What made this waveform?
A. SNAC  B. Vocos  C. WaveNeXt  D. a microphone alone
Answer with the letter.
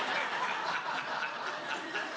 D